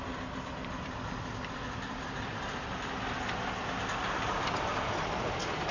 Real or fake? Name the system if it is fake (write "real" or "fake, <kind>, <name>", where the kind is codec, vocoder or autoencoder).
fake, vocoder, BigVGAN v2